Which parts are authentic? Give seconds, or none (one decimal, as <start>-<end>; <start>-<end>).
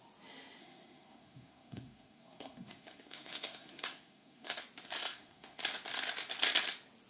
0.0-0.6; 4.6-5.0; 5.6-7.1